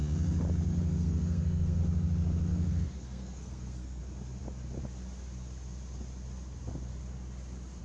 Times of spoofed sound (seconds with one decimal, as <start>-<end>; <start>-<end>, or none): 0.7-1.8; 2.5-4.0